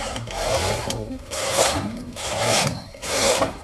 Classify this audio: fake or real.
fake